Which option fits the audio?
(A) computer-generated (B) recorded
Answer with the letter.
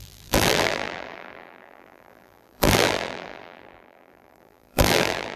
A